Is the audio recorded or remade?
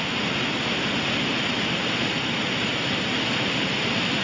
remade